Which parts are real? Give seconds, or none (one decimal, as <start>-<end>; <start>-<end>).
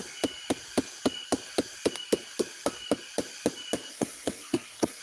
0.0-3.9